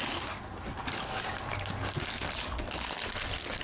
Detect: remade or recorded recorded